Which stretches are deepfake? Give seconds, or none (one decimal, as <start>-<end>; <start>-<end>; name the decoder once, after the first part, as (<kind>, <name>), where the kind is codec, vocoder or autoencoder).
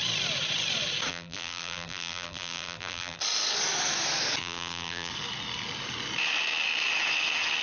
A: 1.1-3.2 (vocoder, BigVGAN v2); 4.4-5.1